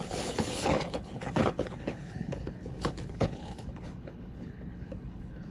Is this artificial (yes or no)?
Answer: yes